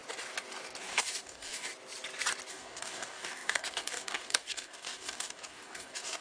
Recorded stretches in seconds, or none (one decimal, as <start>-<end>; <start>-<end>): 0.0-0.8; 1.7-2.5